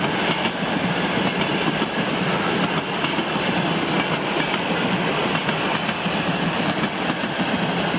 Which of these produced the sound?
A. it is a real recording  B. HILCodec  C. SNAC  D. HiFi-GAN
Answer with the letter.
A